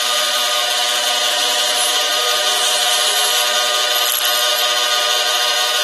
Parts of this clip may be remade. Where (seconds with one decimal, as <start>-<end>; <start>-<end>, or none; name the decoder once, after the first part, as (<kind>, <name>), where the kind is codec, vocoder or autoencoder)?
0.0-0.6 (vocoder, BigVGAN v2); 1.3-3.4; 5.3-5.8